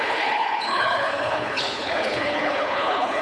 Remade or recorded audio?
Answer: remade